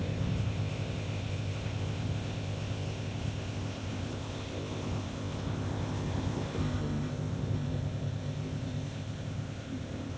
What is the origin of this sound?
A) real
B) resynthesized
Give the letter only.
B